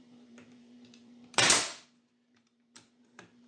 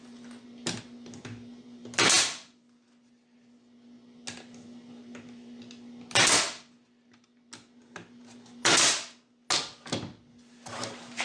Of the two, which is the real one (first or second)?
second